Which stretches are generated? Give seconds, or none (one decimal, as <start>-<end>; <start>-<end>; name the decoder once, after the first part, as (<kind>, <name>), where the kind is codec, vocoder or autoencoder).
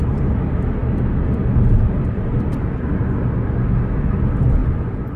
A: none